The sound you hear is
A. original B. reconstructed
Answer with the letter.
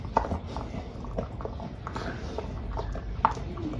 A